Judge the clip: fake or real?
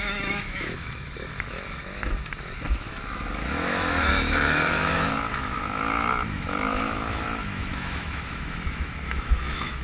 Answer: fake